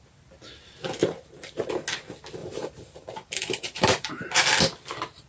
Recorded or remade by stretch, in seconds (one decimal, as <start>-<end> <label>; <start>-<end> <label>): 0.0-1.0 recorded; 1.0-1.7 remade; 1.7-2.4 recorded; 2.4-4.3 remade; 4.3-5.3 recorded

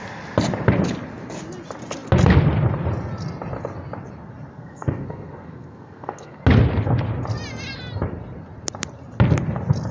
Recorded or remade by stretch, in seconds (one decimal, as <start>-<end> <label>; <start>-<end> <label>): 0.0-4.5 recorded; 4.5-6.4 remade; 6.4-9.9 recorded

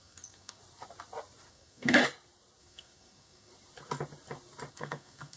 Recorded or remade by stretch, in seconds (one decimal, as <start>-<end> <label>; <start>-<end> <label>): 0.0-0.6 remade; 0.6-1.5 recorded; 1.5-2.0 remade; 2.0-2.6 recorded; 2.6-3.5 remade; 3.5-4.7 recorded; 4.7-5.4 remade

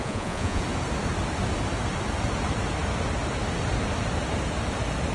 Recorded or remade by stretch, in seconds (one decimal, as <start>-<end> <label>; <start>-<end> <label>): 0.0-0.6 remade; 0.6-5.1 recorded